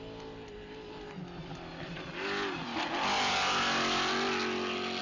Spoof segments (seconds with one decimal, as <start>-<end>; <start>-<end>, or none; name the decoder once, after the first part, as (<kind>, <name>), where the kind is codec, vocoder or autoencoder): none